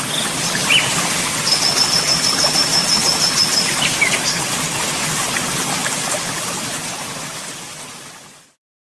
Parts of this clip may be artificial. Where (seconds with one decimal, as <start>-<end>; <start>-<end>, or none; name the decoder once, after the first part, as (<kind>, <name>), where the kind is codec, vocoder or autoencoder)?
none